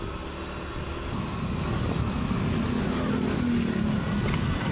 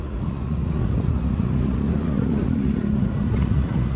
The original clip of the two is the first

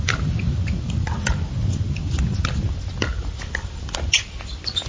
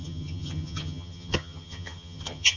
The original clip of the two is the first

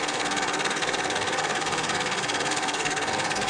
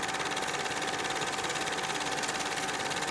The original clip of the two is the second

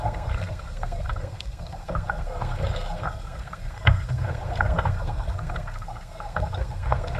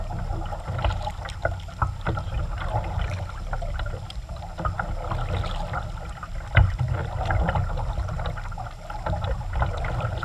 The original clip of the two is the second